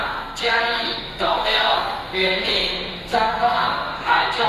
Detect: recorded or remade remade